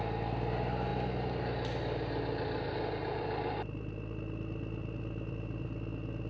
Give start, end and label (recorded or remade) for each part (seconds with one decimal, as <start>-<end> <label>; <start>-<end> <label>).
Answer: 0.0-6.3 recorded